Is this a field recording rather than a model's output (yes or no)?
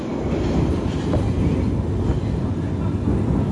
yes